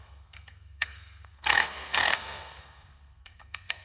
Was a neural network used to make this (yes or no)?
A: yes